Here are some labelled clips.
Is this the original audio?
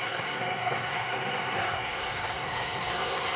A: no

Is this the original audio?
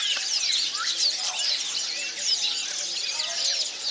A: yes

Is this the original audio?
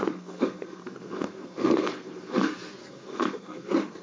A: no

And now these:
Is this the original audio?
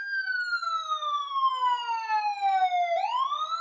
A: yes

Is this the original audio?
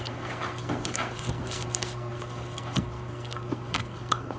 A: no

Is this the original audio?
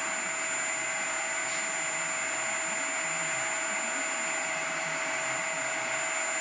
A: yes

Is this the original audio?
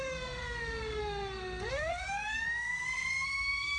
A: no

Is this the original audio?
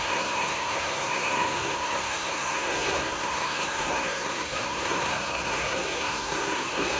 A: no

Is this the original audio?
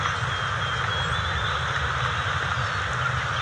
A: yes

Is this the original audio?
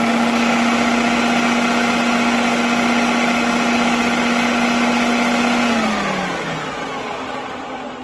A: yes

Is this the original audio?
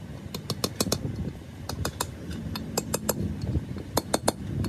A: yes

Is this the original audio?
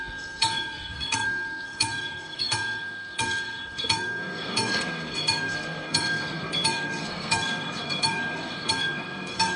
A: no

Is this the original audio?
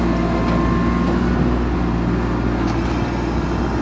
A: yes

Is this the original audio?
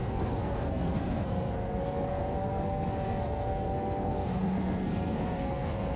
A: no